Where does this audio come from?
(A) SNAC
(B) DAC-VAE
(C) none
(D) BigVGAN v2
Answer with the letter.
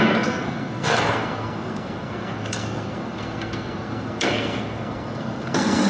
A